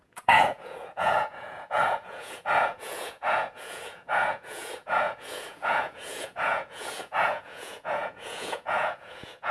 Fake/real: fake